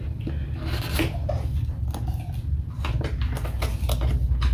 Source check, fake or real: real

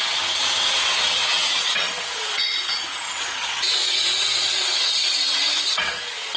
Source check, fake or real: fake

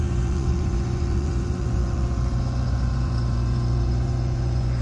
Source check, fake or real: fake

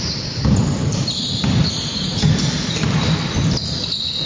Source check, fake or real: fake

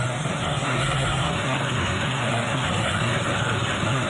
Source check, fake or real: fake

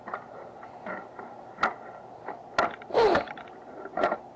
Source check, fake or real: real